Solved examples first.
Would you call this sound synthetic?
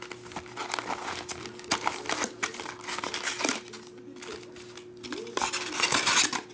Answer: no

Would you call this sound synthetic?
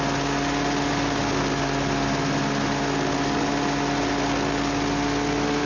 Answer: no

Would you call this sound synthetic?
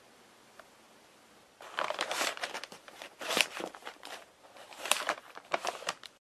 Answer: yes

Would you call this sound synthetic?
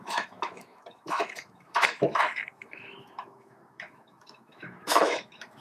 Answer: yes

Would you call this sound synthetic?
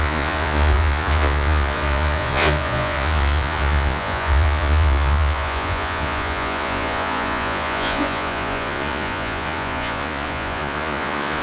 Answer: yes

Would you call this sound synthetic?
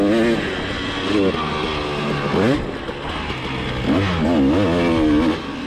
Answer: no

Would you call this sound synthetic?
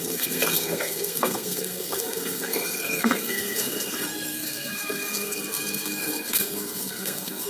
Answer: yes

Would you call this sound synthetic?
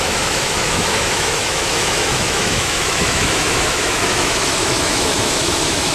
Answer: yes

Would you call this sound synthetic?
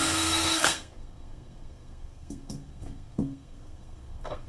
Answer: yes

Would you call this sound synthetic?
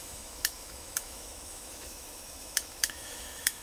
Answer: yes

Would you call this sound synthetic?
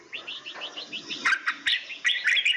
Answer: no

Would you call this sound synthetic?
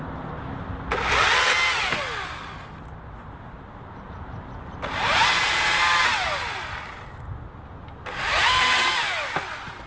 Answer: no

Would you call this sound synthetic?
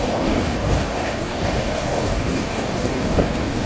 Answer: yes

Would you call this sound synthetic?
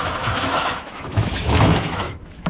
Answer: yes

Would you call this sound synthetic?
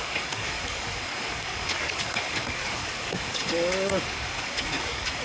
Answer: yes